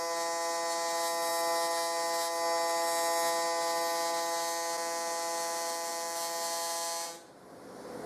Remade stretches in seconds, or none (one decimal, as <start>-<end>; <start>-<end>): none